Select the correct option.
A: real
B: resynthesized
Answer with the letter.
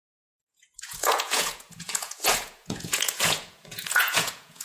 B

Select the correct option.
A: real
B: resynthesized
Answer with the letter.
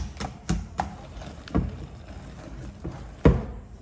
A